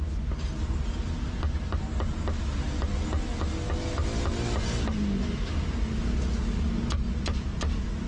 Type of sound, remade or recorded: recorded